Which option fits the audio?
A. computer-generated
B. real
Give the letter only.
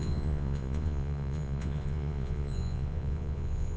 A